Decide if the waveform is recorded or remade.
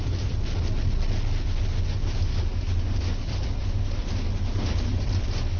recorded